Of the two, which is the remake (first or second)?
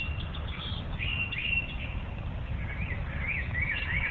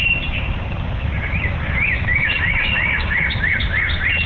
second